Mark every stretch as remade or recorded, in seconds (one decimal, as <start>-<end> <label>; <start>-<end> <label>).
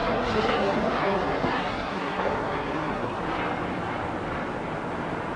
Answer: 0.0-3.2 remade; 3.2-5.4 recorded